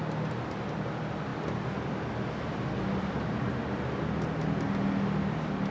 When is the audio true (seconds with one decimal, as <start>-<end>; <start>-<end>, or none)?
0.0-5.7